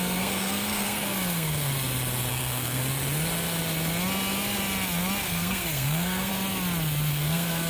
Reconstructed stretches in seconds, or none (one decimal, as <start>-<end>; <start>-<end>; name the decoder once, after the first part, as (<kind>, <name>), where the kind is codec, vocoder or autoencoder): 0.0-1.7 (codec, SNAC); 2.3-2.8; 5.2-6.3; 7.1-7.7